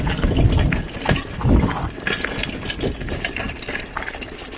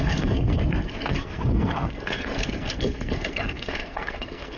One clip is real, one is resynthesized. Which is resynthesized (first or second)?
second